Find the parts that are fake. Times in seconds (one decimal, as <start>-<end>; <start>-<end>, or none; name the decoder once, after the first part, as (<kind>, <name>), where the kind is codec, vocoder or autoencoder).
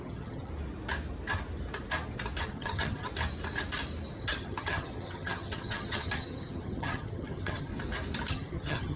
0.0-0.5 (vocoder, HiFi-GAN); 2.5-3.1; 4.2-7.7; 8.3-9.0